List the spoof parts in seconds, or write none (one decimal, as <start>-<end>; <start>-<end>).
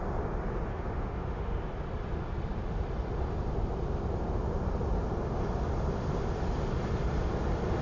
0.7-1.6